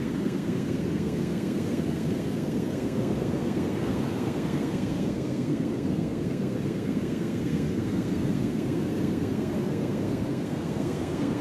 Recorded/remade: remade